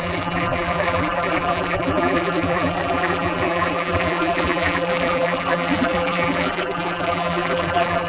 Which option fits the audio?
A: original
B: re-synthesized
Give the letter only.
B